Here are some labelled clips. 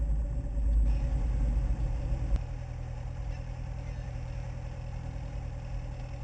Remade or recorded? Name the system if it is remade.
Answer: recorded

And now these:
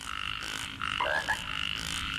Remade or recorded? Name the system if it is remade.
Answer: recorded